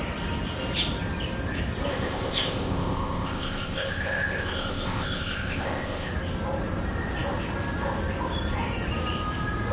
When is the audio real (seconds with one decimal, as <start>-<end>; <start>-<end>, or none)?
0.0-1.9; 6.1-9.7

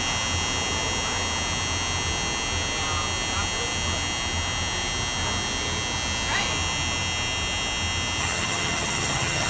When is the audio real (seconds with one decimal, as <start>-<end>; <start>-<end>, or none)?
0.0-8.2

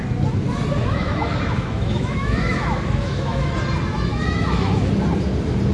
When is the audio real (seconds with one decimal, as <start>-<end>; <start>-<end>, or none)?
0.0-0.8; 3.5-4.1; 4.9-5.7